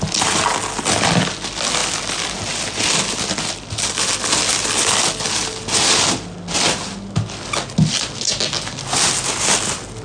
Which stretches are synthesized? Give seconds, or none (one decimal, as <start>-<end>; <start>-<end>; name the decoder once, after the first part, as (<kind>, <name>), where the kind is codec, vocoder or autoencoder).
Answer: none